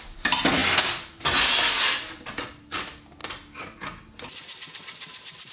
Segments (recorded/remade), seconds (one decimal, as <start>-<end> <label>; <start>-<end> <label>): 0.0-5.5 recorded